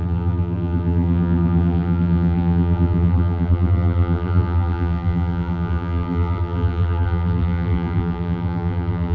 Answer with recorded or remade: remade